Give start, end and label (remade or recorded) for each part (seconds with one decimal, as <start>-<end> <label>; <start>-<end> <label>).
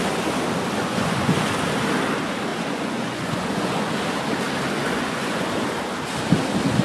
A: 0.0-0.8 recorded; 0.8-1.5 remade; 1.5-2.5 recorded; 2.5-3.9 remade; 3.9-4.8 recorded; 4.8-5.5 remade; 5.5-6.8 recorded